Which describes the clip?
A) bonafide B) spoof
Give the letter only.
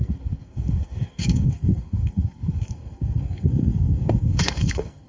B